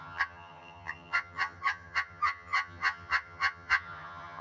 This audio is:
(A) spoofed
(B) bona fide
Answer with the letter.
A